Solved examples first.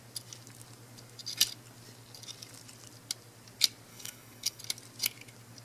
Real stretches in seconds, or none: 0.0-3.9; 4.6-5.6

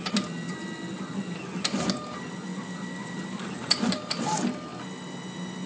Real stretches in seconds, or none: 0.0-2.5; 4.0-5.7